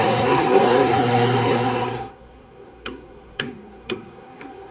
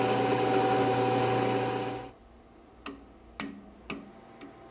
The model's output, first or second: first